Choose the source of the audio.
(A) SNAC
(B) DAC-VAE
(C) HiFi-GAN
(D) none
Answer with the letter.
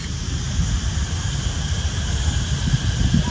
D